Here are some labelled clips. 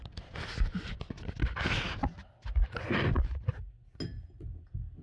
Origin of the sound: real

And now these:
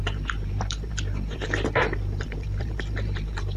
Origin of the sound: fake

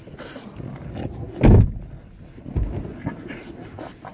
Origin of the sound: real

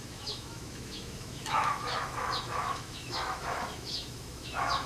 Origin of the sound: fake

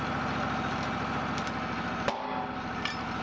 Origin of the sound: real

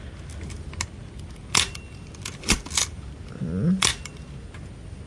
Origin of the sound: real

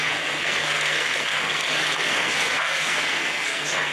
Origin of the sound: fake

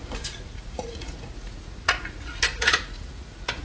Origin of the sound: fake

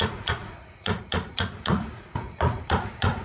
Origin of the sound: fake